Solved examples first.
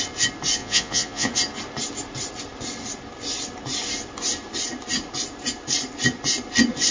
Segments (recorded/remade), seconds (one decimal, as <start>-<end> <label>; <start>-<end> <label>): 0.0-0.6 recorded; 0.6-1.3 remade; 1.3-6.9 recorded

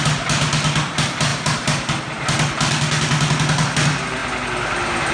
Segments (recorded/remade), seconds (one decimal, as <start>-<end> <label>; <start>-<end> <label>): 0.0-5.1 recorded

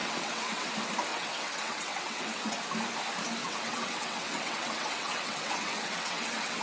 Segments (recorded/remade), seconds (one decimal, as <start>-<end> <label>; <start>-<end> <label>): 0.0-0.7 remade; 0.7-1.1 recorded; 1.1-2.6 remade; 2.6-3.4 recorded; 3.4-6.6 remade

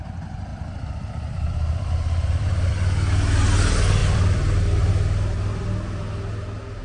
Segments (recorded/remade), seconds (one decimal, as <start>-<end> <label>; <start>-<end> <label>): 0.0-0.5 recorded; 0.5-2.7 remade; 2.7-4.0 recorded; 4.0-4.9 remade; 4.9-6.8 recorded

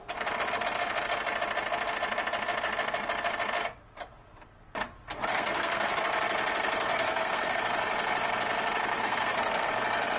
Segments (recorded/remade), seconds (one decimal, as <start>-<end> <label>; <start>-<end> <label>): 0.0-5.3 recorded; 5.3-6.0 remade; 6.0-6.9 recorded; 6.9-7.6 remade; 7.6-9.0 recorded; 9.0-9.7 remade; 9.7-10.2 recorded

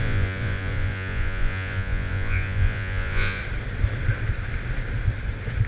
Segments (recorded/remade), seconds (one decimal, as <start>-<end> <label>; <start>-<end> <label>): 0.0-3.4 remade; 3.4-5.7 recorded